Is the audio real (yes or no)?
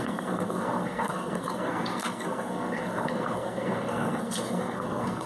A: no